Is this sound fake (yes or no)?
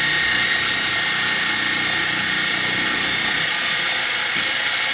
no